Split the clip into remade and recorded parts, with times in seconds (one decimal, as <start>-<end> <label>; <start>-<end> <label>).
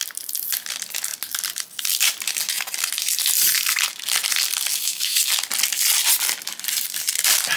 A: 0.0-4.7 recorded; 4.7-5.2 remade; 5.2-7.6 recorded